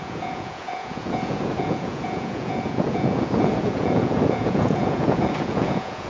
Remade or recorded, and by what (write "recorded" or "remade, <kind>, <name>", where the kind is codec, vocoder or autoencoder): remade, vocoder, Vocos